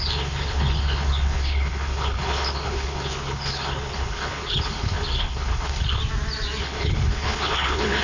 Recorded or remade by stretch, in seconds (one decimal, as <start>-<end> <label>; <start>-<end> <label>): 0.0-6.0 remade; 6.0-6.6 recorded; 6.6-8.0 remade